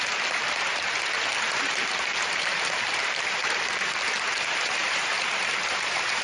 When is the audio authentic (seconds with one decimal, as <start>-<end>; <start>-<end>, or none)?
none